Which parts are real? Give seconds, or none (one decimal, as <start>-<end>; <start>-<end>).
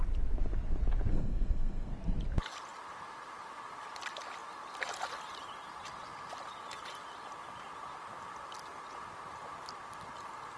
0.0-1.1; 1.9-10.6